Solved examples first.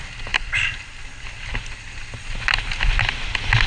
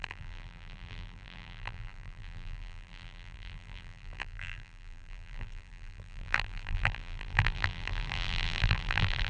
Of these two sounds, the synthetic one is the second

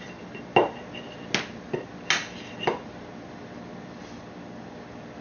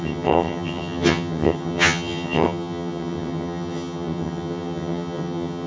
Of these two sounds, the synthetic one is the second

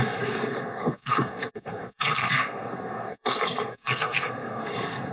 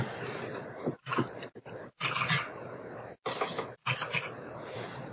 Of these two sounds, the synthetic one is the first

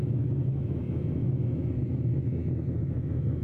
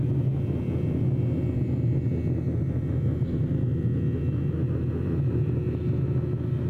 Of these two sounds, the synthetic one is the first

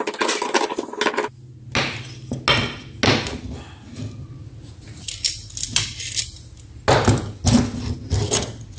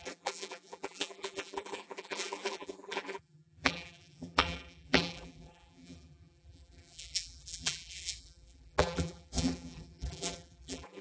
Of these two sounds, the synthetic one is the second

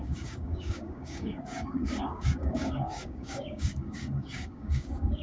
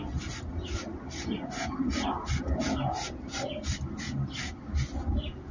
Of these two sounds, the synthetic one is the first